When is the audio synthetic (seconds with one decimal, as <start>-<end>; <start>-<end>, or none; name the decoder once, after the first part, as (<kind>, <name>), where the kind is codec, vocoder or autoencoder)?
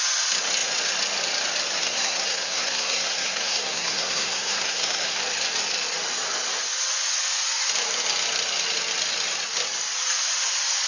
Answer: 1.8-5.2 (codec, SNAC)